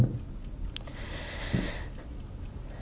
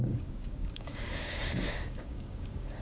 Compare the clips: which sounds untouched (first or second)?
first